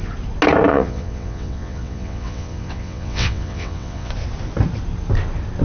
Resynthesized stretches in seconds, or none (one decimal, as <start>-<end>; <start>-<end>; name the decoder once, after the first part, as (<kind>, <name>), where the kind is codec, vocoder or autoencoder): 0.7-4.1 (vocoder, WaveNeXt)